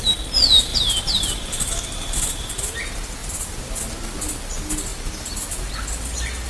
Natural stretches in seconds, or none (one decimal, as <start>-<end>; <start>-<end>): 0.0-0.7; 2.5-3.2; 3.8-6.5